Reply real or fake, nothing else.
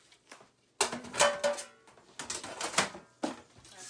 real